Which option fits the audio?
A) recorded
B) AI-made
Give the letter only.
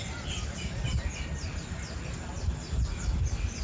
A